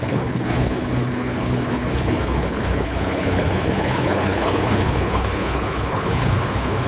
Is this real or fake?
fake